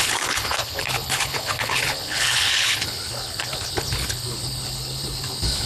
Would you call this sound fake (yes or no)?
yes